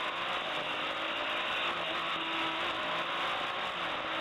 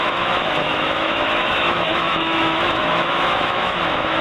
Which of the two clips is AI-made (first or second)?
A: second